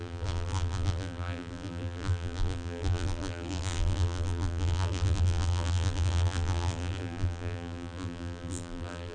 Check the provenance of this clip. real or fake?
fake